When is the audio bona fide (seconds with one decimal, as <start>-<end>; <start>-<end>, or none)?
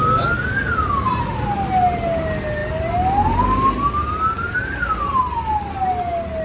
0.0-6.4